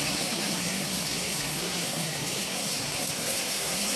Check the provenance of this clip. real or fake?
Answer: fake